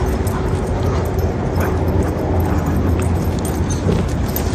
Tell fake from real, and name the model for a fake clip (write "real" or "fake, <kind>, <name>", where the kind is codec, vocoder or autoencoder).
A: real